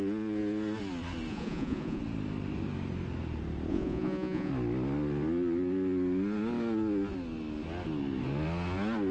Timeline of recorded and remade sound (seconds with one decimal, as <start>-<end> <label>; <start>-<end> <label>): 0.0-1.3 recorded; 1.3-2.0 remade; 2.0-3.7 recorded; 3.7-4.5 remade; 4.5-9.1 recorded